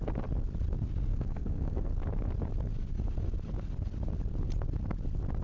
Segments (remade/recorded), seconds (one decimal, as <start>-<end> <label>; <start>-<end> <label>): 0.0-1.1 recorded; 1.1-1.9 remade; 1.9-5.4 recorded